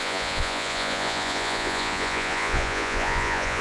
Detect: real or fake fake